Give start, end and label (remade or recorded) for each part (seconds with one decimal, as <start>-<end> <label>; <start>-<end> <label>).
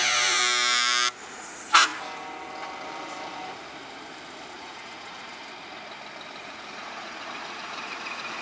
0.0-0.4 remade; 0.4-1.3 recorded; 1.3-1.9 remade; 1.9-4.5 recorded; 4.5-5.4 remade; 5.4-6.4 recorded; 6.4-8.4 remade